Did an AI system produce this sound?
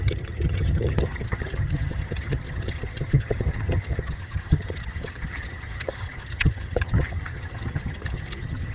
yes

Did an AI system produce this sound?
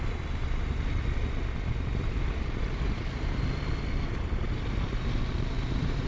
yes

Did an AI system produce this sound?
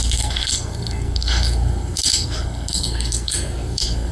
yes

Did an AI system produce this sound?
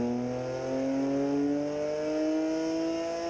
no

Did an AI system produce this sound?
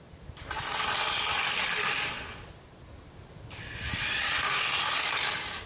no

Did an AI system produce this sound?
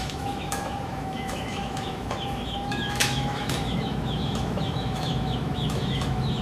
yes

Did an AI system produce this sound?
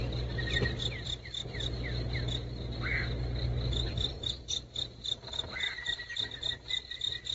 yes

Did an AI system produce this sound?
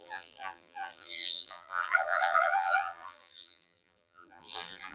yes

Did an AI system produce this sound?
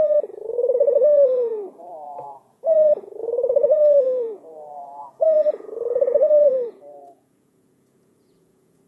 yes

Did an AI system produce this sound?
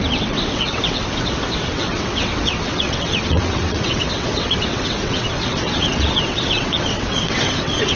yes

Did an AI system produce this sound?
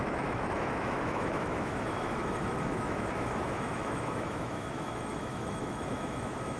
yes